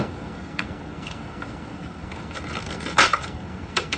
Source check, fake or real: fake